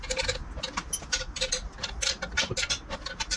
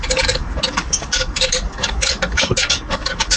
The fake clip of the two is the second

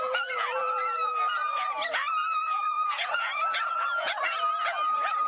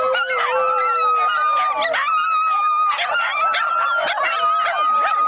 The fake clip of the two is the first